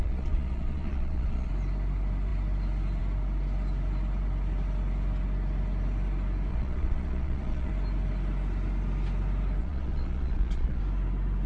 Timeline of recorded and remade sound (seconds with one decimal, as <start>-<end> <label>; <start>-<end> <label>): 0.0-1.5 remade; 1.5-6.5 recorded; 6.5-7.7 remade; 7.7-9.6 recorded; 9.6-10.8 remade; 10.8-11.5 recorded